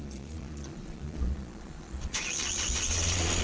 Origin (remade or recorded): remade